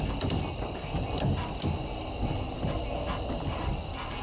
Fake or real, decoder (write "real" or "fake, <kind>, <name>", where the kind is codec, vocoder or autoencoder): real